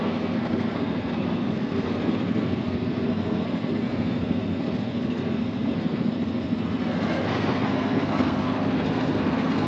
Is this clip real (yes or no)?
no